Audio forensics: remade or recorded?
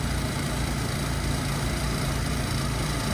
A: remade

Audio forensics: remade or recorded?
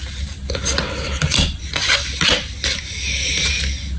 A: recorded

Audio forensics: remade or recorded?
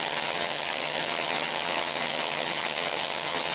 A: remade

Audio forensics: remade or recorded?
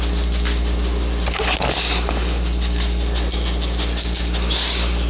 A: recorded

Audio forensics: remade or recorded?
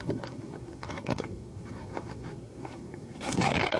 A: remade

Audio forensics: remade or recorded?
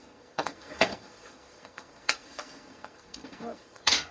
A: remade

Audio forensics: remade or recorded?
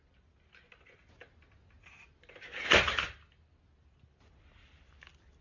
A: recorded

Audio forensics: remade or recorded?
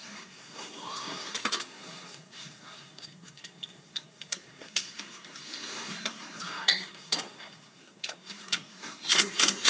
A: remade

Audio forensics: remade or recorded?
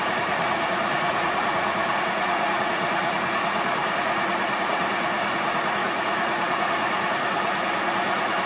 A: remade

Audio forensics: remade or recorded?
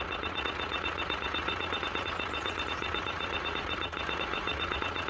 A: remade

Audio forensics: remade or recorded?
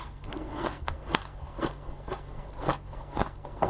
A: remade